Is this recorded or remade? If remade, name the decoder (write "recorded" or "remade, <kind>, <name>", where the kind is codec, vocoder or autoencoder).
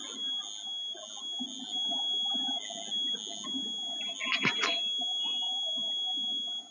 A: recorded